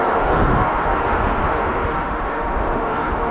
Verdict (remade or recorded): remade